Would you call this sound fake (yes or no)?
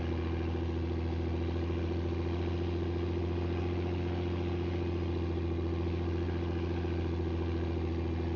no